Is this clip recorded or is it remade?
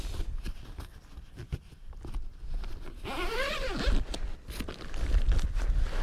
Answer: recorded